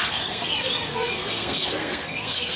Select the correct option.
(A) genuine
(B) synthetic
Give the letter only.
B